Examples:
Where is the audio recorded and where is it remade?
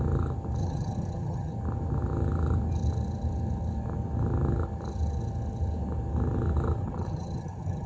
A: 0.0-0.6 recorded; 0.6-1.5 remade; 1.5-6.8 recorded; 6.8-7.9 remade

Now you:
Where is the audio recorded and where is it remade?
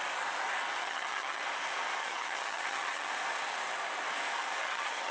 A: 0.0-0.8 recorded; 0.8-1.4 remade; 1.4-2.0 recorded; 2.0-3.1 remade; 3.1-4.6 recorded; 4.6-5.1 remade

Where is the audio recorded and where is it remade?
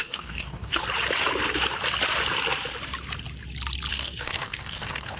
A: 0.0-0.8 remade; 0.8-3.9 recorded; 3.9-5.2 remade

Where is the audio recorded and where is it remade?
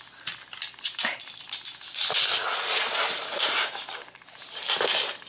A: 0.0-2.8 recorded; 2.8-5.3 remade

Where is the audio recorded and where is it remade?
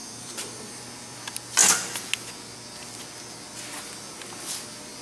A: 0.0-0.8 remade; 0.8-5.0 recorded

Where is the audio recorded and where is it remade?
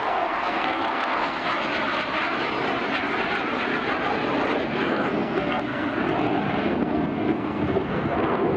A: 0.0-1.5 remade; 1.5-4.7 recorded; 4.7-6.0 remade; 6.0-6.6 recorded; 6.6-8.6 remade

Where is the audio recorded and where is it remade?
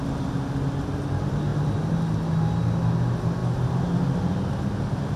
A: 0.0-5.2 recorded